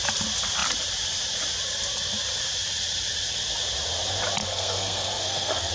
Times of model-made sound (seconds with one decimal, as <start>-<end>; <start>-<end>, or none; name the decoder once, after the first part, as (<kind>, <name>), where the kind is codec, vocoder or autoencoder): 4.4-5.7 (codec, SNAC)